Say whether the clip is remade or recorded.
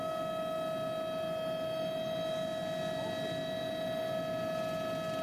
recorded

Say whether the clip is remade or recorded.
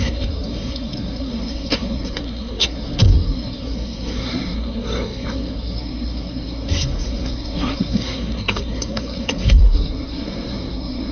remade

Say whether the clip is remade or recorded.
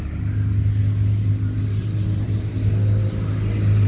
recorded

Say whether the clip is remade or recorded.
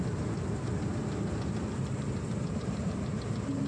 remade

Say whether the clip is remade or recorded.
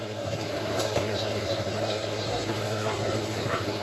remade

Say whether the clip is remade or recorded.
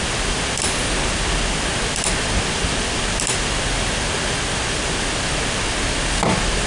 recorded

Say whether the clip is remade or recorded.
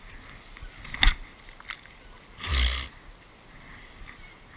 recorded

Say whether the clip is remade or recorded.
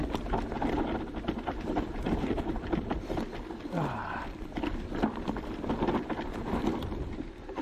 remade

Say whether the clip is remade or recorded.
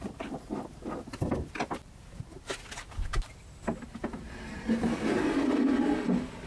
recorded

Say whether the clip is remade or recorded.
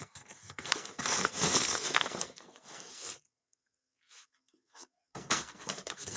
remade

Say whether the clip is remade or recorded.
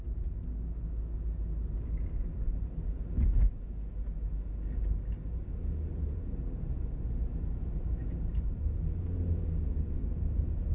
recorded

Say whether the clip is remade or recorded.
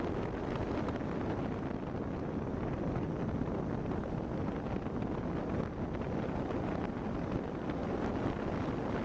recorded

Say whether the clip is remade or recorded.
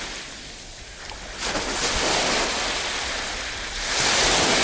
recorded